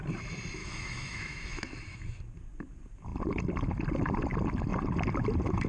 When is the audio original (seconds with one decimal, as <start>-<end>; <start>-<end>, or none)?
0.0-0.6; 2.2-5.7